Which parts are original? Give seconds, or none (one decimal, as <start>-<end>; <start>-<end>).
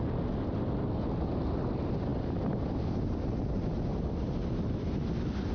0.0-5.5